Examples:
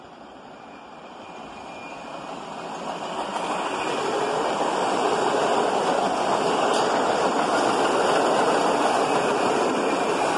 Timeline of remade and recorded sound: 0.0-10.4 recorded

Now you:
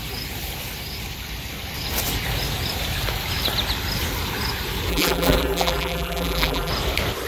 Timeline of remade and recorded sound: 0.0-4.9 recorded; 4.9-6.7 remade; 6.7-7.3 recorded